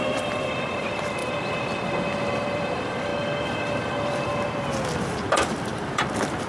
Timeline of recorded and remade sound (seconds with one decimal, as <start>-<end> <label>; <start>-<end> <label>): 0.0-3.1 remade; 3.1-3.6 recorded; 3.6-4.3 remade; 4.3-5.0 recorded; 5.0-6.5 remade